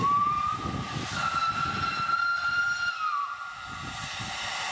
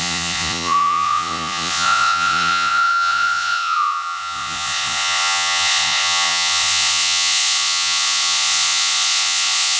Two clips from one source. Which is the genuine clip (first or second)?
first